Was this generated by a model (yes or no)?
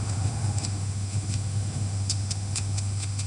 yes